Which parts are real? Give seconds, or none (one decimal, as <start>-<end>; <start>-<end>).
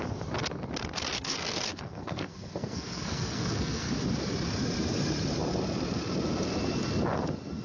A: 0.0-1.1; 3.9-7.6